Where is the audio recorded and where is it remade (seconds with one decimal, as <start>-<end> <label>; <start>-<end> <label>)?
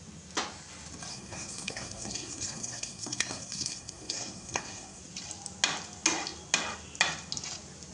0.0-1.1 recorded; 1.1-5.0 remade; 5.0-7.9 recorded